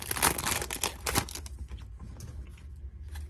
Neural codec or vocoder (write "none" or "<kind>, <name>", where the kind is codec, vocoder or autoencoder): none